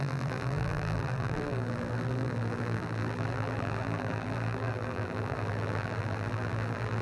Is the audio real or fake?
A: fake